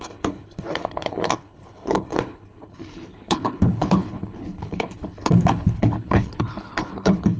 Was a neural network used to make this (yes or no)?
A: yes